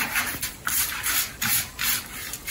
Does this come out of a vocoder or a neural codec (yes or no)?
no